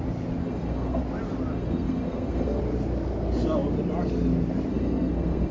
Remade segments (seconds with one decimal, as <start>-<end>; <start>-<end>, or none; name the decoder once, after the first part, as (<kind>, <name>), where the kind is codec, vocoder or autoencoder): 0.4-1.0 (codec, SNAC); 1.5-2.6; 4.7-5.5